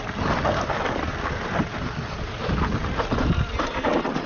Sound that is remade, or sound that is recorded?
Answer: recorded